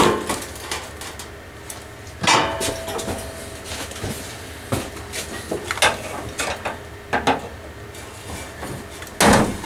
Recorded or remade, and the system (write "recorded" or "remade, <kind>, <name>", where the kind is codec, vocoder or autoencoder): recorded